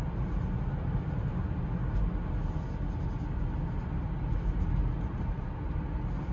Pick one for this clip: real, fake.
real